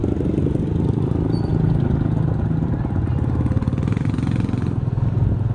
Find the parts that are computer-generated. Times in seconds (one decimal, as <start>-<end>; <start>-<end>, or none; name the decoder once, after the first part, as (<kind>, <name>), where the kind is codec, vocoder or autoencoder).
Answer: none

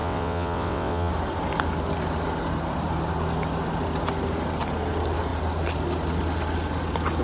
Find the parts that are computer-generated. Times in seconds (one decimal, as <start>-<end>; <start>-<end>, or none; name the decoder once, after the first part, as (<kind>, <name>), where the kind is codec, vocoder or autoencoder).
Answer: 0.0-1.1 (vocoder, WaveNeXt)

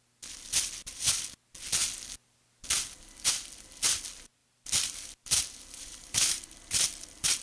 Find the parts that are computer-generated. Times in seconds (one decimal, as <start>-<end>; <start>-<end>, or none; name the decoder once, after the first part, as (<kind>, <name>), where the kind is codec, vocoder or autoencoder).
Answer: 4.4-6.4 (vocoder, BigVGAN v2)